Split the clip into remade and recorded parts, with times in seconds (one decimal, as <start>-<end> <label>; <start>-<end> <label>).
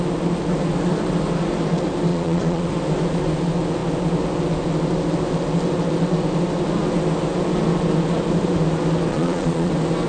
0.0-2.1 recorded; 2.1-2.7 remade; 2.7-9.1 recorded; 9.1-9.7 remade; 9.7-10.1 recorded